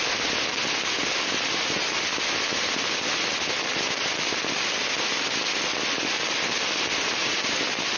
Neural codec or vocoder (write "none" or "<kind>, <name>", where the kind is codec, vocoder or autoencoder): none